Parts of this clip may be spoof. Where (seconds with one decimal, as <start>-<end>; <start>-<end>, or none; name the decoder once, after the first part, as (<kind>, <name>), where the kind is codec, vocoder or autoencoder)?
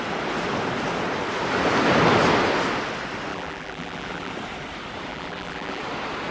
3.3-4.3 (vocoder, BigVGAN v2); 5.1-5.8